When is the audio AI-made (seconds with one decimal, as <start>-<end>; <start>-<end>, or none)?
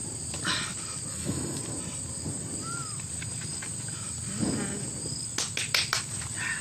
1.1-1.6